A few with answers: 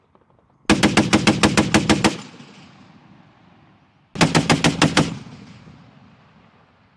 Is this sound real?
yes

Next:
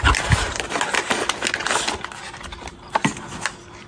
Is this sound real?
yes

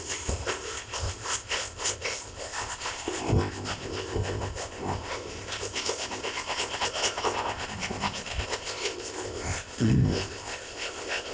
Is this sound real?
no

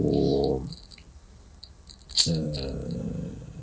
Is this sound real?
yes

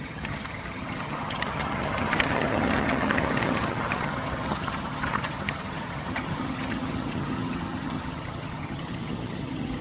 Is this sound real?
no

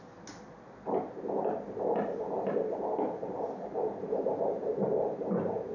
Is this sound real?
yes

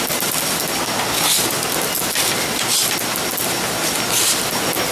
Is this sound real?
yes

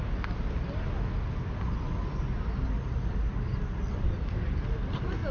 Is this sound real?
yes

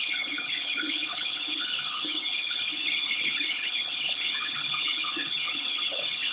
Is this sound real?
no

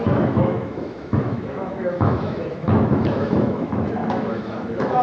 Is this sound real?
no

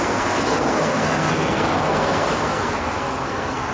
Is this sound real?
no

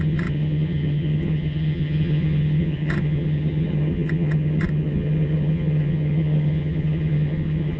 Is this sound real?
no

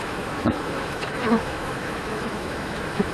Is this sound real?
no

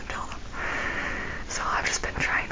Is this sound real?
yes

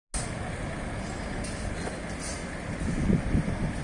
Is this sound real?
yes